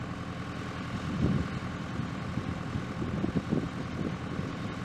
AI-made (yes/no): no